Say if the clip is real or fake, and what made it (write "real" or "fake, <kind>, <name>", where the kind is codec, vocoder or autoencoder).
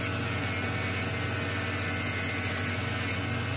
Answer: real